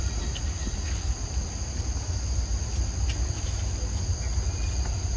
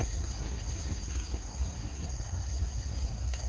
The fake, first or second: second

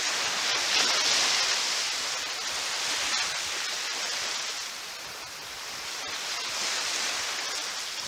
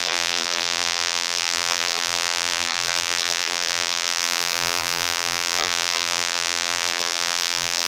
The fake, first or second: second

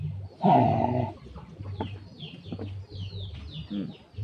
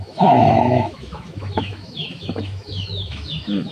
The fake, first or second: second